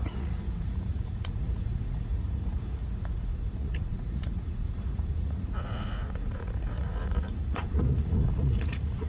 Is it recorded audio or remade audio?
remade